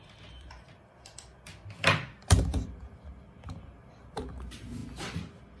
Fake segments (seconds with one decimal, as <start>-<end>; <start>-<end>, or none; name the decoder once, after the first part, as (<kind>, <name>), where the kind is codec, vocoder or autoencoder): 0.0-4.8 (vocoder, BigVGAN v2)